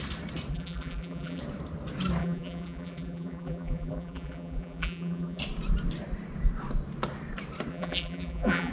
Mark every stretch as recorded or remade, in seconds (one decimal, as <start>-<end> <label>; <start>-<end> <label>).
0.0-0.5 recorded; 0.5-1.4 remade; 1.4-2.2 recorded; 2.2-5.4 remade; 5.4-7.7 recorded; 7.7-8.7 remade